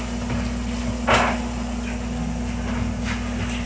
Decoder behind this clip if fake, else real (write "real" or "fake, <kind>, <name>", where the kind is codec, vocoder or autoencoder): real